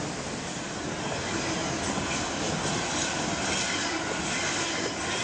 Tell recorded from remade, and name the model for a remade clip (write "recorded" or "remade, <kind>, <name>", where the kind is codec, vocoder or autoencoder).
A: recorded